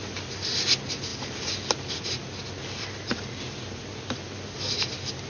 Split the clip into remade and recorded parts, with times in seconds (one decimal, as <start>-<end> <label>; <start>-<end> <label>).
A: 0.0-5.3 recorded